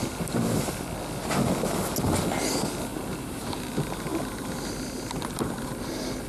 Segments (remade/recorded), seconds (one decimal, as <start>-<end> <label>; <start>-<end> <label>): 0.0-0.6 remade; 0.6-2.9 recorded; 2.9-3.6 remade; 3.6-6.3 recorded